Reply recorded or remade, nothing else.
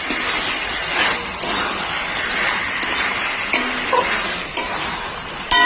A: recorded